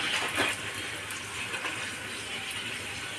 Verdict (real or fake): real